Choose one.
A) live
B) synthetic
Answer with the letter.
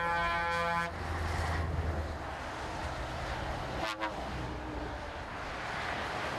A